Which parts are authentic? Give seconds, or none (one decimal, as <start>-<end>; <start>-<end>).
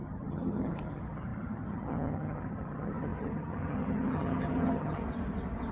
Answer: 5.0-5.7